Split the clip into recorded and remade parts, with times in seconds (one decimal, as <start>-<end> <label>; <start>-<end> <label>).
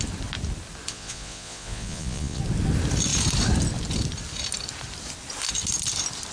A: 0.0-0.9 recorded; 0.9-2.4 remade; 2.4-6.3 recorded